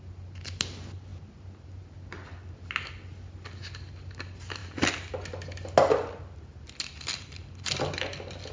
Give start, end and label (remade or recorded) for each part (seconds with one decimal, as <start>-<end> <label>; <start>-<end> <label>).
0.0-8.5 recorded